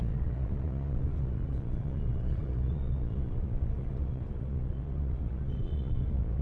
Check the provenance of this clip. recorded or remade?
remade